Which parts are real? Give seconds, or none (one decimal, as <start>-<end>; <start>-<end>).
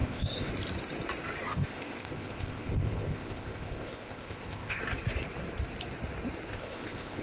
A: 0.5-1.5; 4.8-6.5